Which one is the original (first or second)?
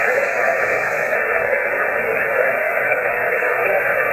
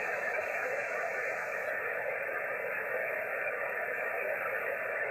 second